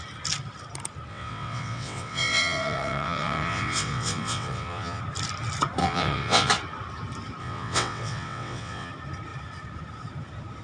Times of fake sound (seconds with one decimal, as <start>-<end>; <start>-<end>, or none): 1.1-5.0; 5.8-6.5; 7.4-8.9